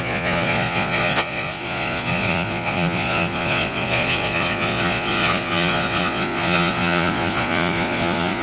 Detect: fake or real fake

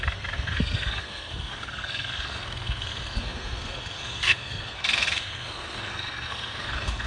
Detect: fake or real fake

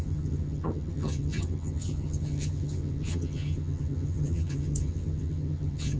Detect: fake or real fake